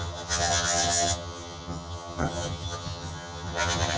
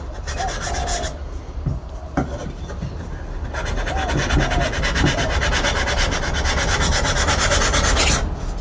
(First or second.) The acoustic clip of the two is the second